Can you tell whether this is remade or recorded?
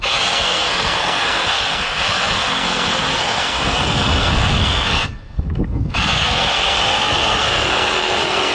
remade